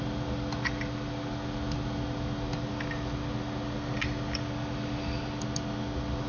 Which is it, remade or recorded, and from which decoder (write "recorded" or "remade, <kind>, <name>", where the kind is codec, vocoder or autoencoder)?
recorded